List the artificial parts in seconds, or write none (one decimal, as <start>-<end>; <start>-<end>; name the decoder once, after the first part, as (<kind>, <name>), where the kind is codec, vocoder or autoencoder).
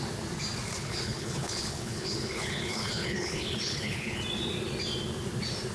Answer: 0.8-4.2 (codec, HILCodec)